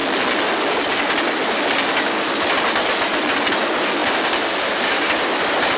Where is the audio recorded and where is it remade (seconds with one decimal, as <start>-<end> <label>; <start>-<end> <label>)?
0.0-5.8 recorded